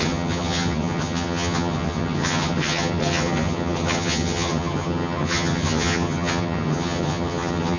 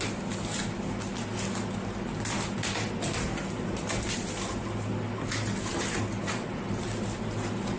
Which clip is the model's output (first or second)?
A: first